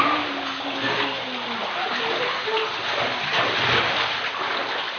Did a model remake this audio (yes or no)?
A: no